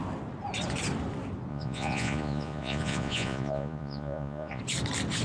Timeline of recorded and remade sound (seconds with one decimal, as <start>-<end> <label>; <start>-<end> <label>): 0.0-1.5 recorded; 1.5-4.6 remade; 4.6-5.2 recorded